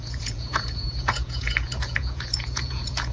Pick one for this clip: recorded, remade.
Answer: remade